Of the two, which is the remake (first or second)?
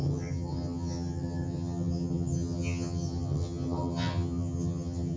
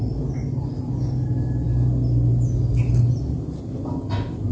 first